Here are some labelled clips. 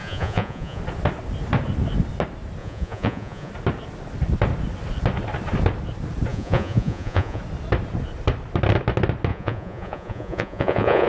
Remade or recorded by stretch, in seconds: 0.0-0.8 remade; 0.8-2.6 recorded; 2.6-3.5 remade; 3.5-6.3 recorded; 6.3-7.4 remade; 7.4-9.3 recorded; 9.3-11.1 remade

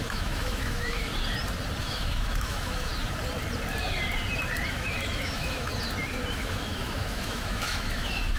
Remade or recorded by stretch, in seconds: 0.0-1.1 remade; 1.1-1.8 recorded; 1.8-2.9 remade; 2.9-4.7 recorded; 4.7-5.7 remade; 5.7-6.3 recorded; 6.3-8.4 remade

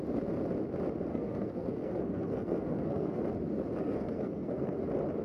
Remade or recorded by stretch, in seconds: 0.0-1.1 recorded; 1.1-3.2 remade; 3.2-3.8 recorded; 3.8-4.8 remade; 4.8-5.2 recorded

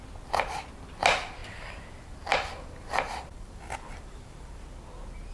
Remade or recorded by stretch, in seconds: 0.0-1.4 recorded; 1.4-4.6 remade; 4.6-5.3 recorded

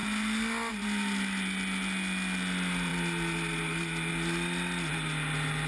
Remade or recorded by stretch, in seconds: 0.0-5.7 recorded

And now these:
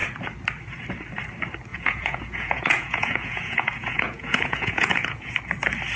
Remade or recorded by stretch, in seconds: 0.0-1.7 recorded; 1.7-5.3 remade; 5.3-6.0 recorded

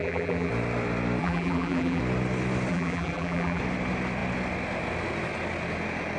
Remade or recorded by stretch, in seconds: 0.0-0.5 remade; 0.5-1.2 recorded; 1.2-2.0 remade; 2.0-2.7 recorded; 2.7-3.6 remade; 3.6-6.2 recorded

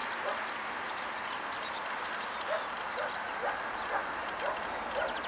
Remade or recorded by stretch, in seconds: 0.0-5.3 recorded